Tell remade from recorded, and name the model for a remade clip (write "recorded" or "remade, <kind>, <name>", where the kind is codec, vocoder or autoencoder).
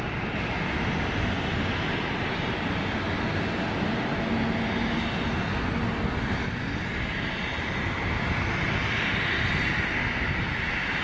recorded